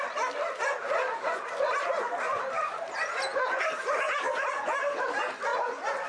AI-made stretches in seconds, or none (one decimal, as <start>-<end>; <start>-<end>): none